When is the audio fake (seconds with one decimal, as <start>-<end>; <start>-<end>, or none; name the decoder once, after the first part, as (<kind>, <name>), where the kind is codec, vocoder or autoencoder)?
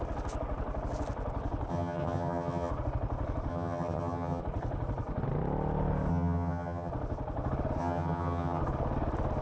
1.7-2.7 (vocoder, HiFi-GAN); 3.5-4.4; 6.1-6.9; 7.8-8.6